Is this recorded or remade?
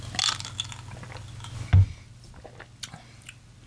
recorded